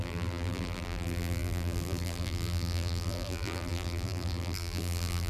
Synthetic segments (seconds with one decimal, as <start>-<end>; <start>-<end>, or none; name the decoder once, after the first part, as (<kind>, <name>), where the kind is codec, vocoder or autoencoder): 0.0-5.3 (vocoder, BigVGAN v2)